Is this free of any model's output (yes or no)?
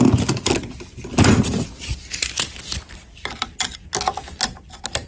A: yes